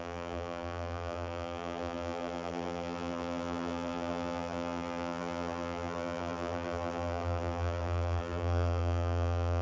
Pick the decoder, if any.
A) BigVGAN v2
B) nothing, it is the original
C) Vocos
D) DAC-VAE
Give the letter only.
A